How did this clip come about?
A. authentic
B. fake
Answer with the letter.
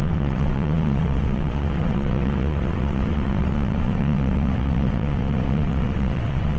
B